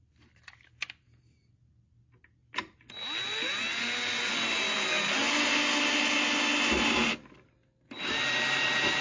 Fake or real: real